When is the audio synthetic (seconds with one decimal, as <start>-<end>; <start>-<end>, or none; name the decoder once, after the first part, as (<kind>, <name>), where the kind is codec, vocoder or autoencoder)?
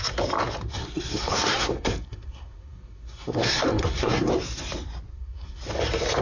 0.7-4.3 (codec, SNAC); 5.1-5.6